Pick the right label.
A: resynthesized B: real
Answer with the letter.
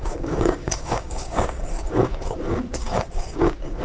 A